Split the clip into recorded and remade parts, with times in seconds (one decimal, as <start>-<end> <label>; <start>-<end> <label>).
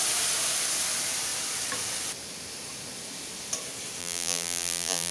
0.0-4.0 recorded; 4.0-5.1 remade